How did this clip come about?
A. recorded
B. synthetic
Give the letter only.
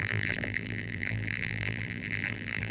B